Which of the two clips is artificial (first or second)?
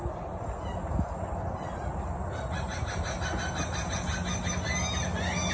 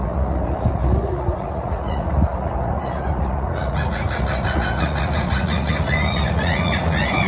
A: second